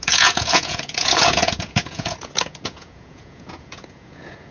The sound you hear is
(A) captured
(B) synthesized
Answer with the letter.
B